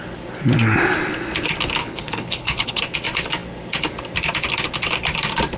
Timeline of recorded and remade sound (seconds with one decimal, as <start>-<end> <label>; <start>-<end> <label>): 0.0-1.8 recorded; 1.8-2.8 remade; 2.8-5.6 recorded